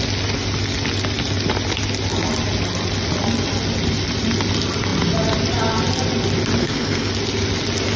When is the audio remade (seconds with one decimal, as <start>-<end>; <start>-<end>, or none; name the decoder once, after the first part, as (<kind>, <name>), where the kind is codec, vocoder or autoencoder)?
6.6-7.1 (codec, SNAC)